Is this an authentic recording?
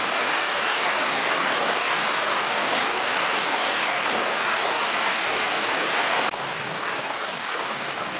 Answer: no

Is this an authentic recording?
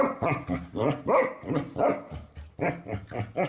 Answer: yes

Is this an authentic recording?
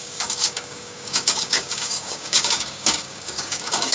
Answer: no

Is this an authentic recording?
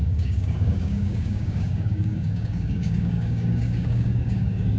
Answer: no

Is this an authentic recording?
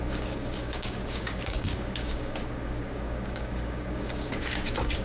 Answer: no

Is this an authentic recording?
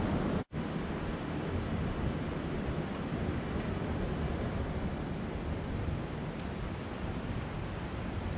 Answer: yes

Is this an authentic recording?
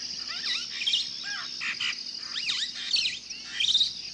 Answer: yes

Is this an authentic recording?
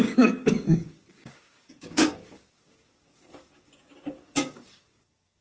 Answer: no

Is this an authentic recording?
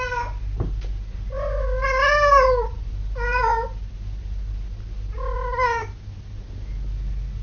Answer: yes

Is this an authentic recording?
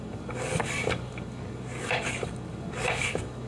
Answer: no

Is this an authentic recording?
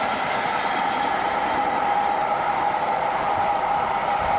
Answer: yes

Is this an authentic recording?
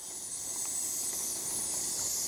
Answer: yes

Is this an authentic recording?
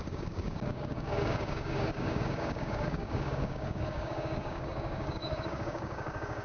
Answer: no